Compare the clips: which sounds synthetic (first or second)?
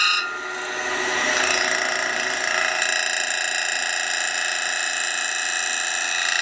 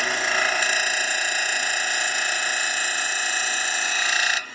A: second